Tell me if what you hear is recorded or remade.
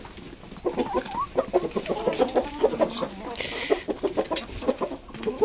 recorded